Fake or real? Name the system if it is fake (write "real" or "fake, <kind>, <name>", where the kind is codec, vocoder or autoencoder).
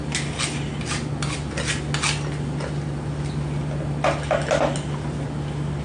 real